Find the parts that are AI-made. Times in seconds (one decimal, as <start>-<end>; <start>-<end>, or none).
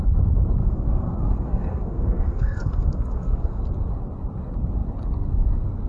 0.6-3.6